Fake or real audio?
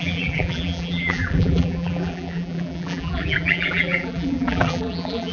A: fake